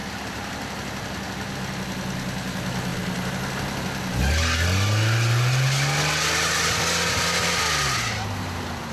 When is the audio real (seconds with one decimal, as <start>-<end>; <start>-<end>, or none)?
0.0-8.9

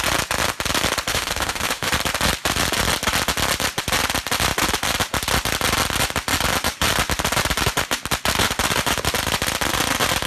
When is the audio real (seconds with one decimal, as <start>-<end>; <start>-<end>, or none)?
0.0-1.1; 1.9-10.3

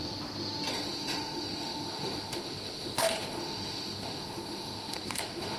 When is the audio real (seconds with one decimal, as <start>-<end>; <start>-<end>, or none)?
0.0-0.7

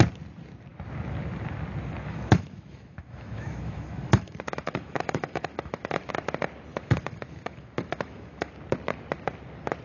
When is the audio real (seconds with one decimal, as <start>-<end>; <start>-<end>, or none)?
0.0-2.1; 6.1-6.7; 8.5-9.8

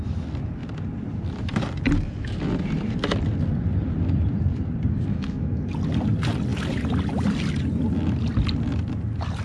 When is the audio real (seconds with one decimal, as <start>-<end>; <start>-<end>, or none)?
0.0-5.1; 5.7-9.4

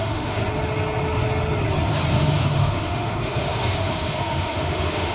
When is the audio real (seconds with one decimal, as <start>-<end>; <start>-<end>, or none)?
0.4-2.1

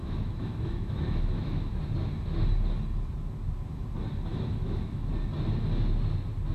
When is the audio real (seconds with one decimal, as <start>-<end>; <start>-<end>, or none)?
1.7-4.3; 5.1-6.5

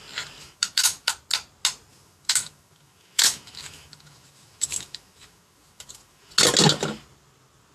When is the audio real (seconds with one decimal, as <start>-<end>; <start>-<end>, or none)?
0.0-0.4; 1.1-1.9; 6.3-7.7